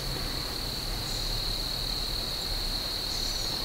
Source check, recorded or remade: recorded